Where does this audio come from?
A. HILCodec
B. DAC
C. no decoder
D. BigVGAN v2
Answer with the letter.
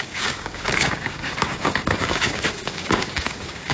B